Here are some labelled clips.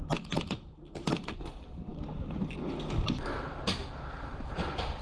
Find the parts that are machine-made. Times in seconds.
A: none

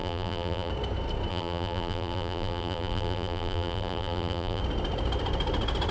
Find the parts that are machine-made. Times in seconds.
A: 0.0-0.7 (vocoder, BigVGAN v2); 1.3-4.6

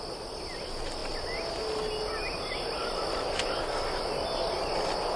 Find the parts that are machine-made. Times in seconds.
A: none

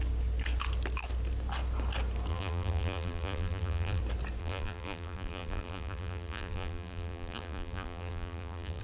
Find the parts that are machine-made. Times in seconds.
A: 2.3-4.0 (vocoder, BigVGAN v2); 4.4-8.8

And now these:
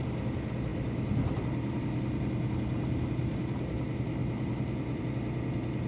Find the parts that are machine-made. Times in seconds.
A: 3.2-3.7 (vocoder, BigVGAN v2); 4.2-5.0